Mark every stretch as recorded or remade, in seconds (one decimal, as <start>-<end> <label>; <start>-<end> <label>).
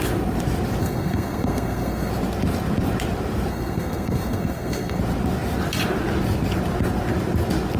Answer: 0.0-0.8 recorded; 0.8-2.1 remade; 2.1-3.5 recorded; 3.5-5.0 remade; 5.0-7.8 recorded